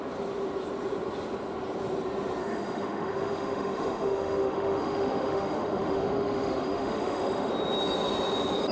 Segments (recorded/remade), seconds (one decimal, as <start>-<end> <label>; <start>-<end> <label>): 0.0-2.4 recorded; 2.4-7.5 remade; 7.5-8.7 recorded